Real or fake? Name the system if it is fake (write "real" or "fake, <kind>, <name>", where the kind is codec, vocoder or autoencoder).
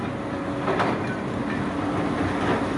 real